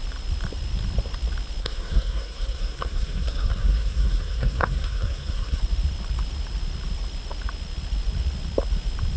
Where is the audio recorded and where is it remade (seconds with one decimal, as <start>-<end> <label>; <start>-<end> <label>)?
0.0-1.6 recorded; 1.6-5.6 remade; 5.6-9.2 recorded